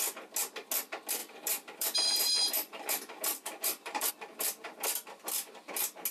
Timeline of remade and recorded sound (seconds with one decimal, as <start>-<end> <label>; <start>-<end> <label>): 0.0-1.2 recorded; 1.2-4.1 remade; 4.1-6.1 recorded